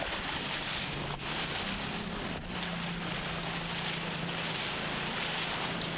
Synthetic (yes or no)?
no